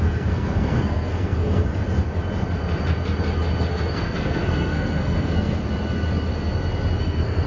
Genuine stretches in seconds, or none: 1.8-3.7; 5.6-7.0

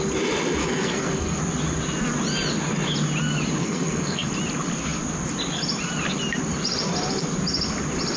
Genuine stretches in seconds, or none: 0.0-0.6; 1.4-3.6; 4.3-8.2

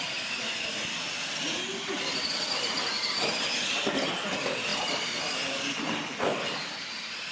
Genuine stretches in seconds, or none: 0.0-7.3

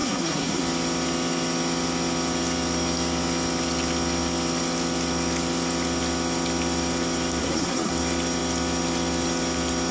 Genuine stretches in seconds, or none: 0.6-7.4; 7.9-9.9

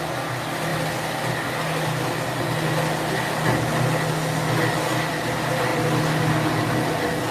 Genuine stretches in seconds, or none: 0.0-7.3